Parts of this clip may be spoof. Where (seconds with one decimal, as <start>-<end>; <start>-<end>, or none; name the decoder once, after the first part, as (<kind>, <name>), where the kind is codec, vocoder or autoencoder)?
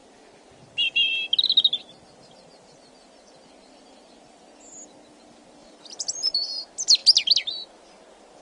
5.6-6.6 (vocoder, BigVGAN v2)